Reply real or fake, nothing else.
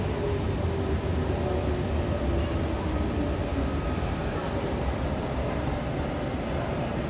real